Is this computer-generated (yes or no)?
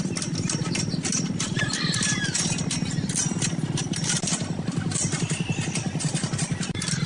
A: no